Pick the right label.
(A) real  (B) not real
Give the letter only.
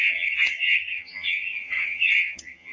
B